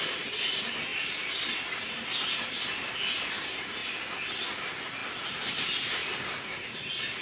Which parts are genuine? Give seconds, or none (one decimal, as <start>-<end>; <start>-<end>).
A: 0.0-7.2